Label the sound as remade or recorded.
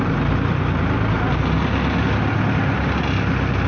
recorded